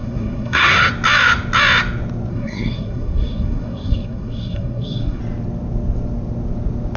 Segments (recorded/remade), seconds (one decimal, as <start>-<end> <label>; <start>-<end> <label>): 0.0-0.9 remade; 0.9-2.3 recorded; 2.3-5.2 remade; 5.2-7.0 recorded